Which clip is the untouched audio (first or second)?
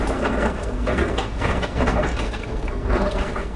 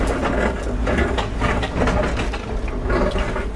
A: second